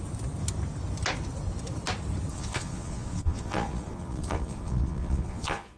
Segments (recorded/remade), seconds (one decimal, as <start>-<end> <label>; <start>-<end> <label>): 0.0-2.3 recorded; 2.3-5.8 remade